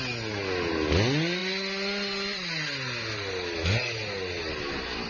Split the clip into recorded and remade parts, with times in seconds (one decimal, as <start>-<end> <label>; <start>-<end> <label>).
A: 0.0-5.1 recorded